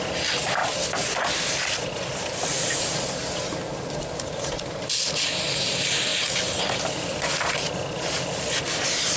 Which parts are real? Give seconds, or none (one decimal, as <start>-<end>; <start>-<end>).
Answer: 6.1-6.6